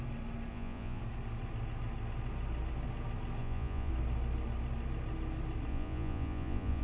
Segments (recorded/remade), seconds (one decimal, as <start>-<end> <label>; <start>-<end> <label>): 0.0-0.5 recorded; 0.5-1.0 remade; 1.0-3.4 recorded; 3.4-3.9 remade; 3.9-5.7 recorded; 5.7-6.8 remade